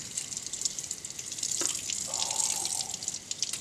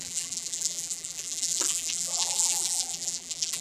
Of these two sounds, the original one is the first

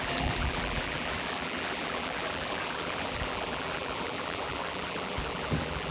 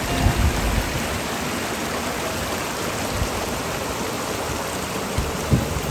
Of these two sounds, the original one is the second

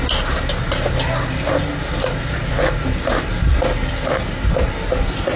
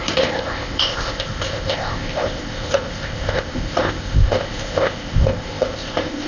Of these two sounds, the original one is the first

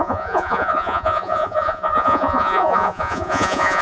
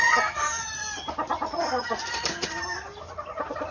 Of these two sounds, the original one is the second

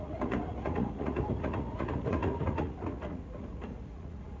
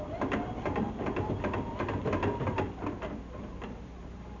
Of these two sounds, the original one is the second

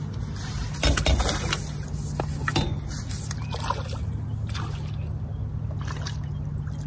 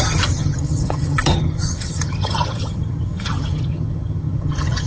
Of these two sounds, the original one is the first